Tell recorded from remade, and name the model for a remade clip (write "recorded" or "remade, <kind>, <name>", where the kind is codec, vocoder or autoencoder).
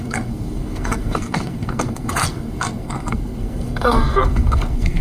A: remade, codec, SNAC